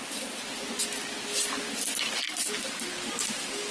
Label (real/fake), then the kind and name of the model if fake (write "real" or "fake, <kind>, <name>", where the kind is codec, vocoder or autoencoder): real